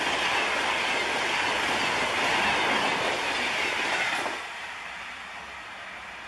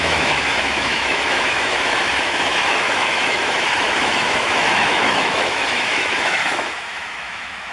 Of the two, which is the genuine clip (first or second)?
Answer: first